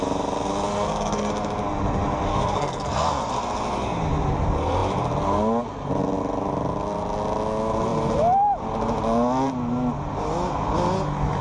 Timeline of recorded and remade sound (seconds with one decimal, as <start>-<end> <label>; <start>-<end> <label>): 0.0-0.7 recorded; 0.7-1.3 remade; 1.3-2.3 recorded; 2.3-3.2 remade; 3.2-11.4 recorded